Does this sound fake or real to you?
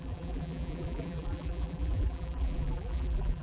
fake